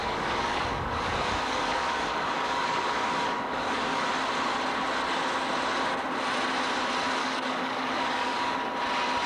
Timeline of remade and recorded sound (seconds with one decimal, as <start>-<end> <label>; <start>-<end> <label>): 0.0-4.1 remade; 4.1-7.2 recorded; 7.2-8.7 remade; 8.7-9.3 recorded